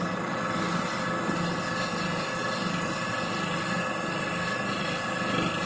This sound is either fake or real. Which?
real